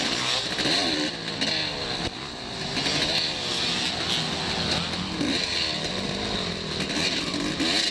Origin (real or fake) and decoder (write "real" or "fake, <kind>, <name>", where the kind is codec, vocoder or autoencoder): real